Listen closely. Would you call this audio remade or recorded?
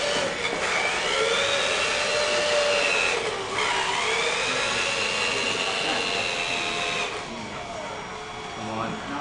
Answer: recorded